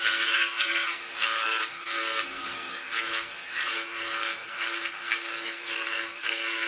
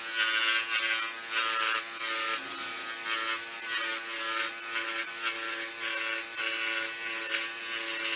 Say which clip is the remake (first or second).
first